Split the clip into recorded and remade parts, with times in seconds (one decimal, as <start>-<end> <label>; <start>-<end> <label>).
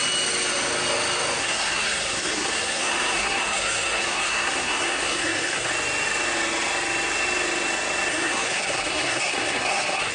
0.0-1.4 recorded; 1.4-5.7 remade; 5.7-8.1 recorded; 8.1-10.1 remade